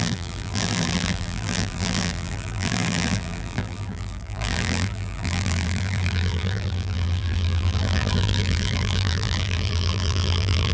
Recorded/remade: remade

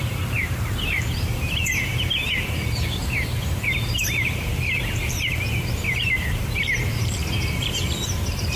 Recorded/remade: remade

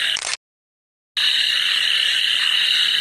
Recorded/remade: recorded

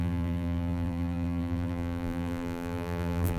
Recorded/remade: remade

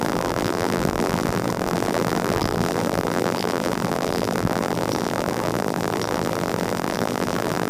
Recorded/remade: remade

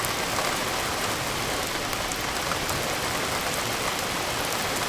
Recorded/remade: recorded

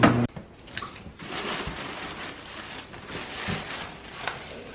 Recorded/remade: recorded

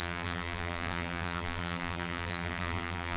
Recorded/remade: remade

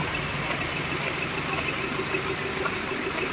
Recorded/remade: recorded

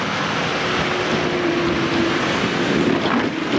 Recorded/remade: remade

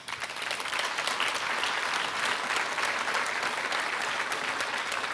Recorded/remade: recorded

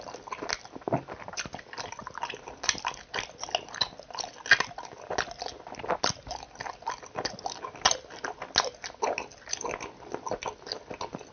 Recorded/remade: recorded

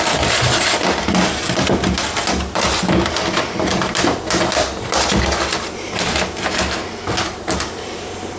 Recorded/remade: remade